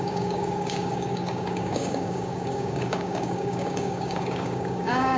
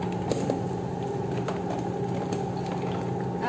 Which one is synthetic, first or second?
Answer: first